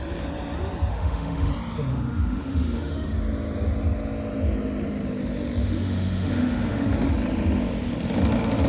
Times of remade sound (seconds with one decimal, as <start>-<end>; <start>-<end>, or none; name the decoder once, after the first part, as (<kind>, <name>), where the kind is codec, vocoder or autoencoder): 0.9-1.5 (autoencoder, DAC-VAE); 1.9-3.2; 5.6-6.9